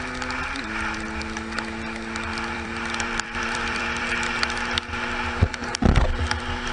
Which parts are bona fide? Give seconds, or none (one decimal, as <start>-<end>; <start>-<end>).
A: 0.0-2.3; 4.1-6.7